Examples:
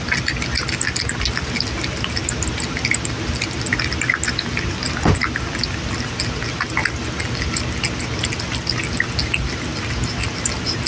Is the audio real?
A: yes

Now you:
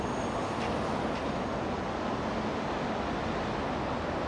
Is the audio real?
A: yes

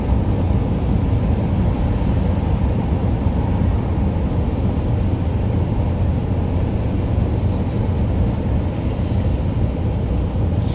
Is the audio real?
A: yes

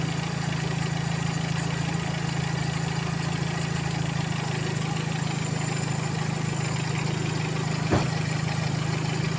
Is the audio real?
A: yes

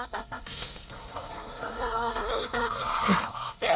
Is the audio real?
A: no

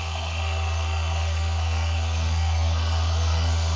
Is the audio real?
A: no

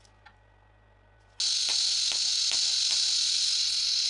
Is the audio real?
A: yes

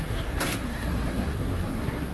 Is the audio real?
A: no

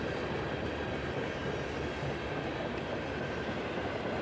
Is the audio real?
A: yes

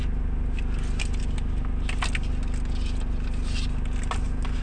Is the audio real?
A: yes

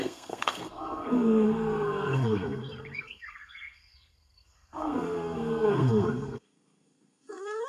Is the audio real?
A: no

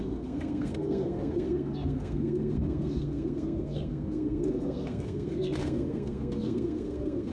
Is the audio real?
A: no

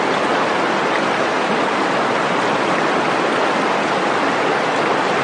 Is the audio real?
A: yes